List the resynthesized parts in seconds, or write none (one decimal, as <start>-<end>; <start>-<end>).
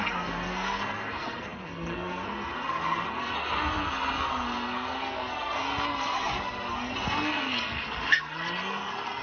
0.0-9.2